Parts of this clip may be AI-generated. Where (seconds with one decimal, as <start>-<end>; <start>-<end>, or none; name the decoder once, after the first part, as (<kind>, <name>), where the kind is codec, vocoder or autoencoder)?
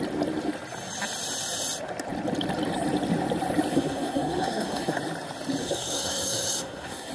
3.7-5.0 (codec, SNAC); 5.6-7.1